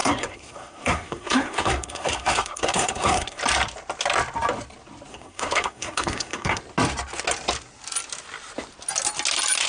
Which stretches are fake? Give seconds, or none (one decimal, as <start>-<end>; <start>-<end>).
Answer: 0.0-3.4; 5.1-6.6